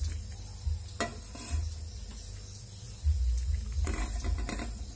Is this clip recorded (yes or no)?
yes